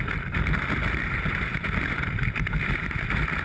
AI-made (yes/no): yes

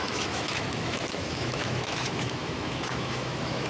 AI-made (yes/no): yes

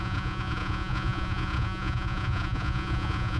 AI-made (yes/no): yes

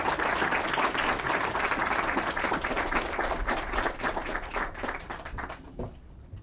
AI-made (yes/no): no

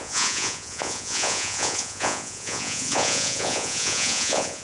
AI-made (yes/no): yes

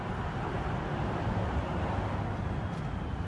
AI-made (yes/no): no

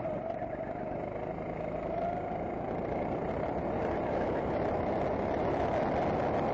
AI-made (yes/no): no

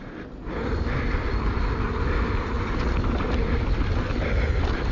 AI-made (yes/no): no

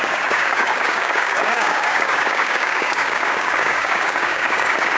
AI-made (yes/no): yes